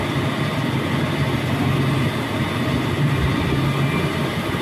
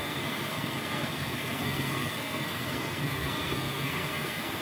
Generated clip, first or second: second